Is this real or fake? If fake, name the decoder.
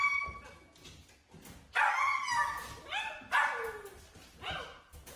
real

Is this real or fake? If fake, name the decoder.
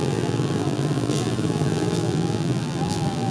fake, vocoder, BigVGAN v2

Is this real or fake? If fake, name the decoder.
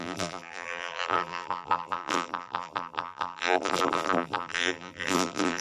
fake, vocoder, BigVGAN v2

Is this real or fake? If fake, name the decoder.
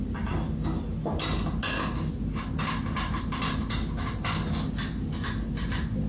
real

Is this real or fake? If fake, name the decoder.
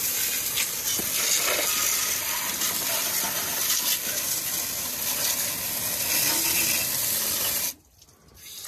real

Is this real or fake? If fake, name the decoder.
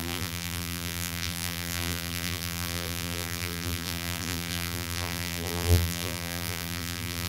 fake, vocoder, BigVGAN v2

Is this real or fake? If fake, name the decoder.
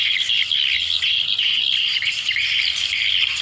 real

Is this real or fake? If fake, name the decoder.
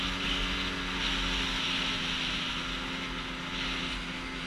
real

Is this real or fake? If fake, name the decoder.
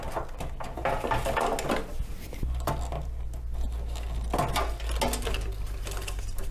real